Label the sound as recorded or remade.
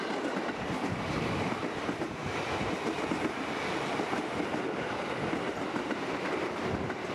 recorded